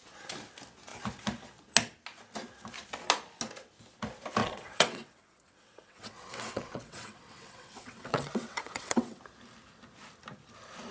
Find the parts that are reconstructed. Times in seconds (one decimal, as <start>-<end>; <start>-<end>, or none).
4.4-9.2